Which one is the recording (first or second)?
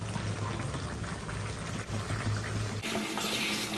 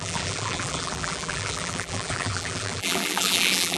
first